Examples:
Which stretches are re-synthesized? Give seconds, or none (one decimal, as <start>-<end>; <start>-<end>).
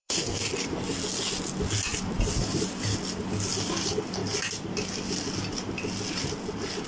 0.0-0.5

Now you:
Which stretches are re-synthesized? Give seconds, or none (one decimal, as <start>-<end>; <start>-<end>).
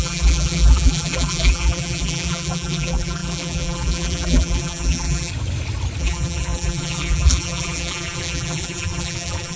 0.0-5.3; 6.0-9.6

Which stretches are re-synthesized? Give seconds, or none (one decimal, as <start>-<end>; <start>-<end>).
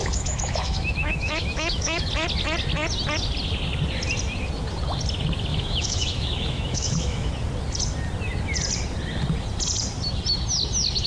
0.0-2.1; 5.5-7.3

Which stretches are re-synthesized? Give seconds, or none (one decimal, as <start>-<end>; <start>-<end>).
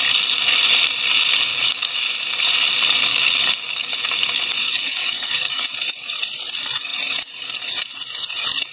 1.5-2.0; 3.1-3.9; 4.6-5.6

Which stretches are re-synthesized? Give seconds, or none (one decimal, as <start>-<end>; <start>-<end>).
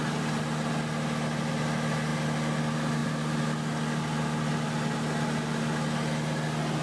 none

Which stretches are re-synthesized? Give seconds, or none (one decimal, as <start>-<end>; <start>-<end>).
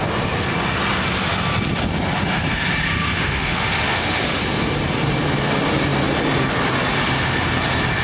2.9-4.4